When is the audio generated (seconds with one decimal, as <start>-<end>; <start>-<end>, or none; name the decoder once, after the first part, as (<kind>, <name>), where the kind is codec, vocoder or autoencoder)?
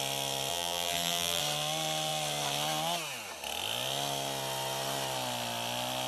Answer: 0.5-1.4 (vocoder, BigVGAN v2)